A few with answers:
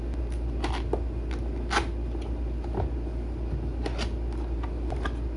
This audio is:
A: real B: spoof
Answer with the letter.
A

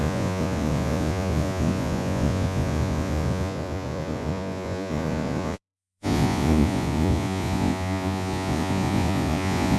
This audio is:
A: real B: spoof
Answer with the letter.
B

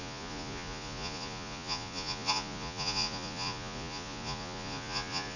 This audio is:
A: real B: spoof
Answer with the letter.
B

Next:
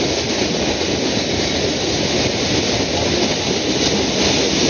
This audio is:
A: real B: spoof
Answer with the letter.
A